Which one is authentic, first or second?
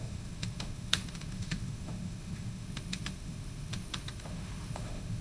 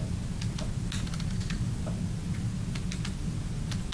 second